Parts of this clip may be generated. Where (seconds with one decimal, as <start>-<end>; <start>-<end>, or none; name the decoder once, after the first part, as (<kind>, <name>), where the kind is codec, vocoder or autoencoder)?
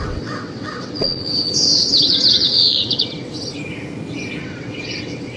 0.0-3.6 (vocoder, WaveNeXt); 4.4-5.4